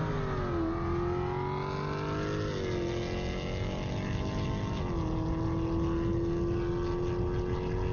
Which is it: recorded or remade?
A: recorded